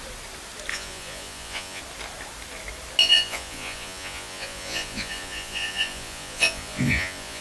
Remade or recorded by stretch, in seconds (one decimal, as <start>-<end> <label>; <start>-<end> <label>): 0.0-0.7 recorded; 0.7-1.8 remade; 1.8-3.0 recorded; 3.0-7.4 remade